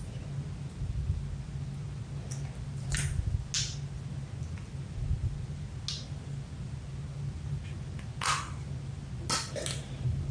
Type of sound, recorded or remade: recorded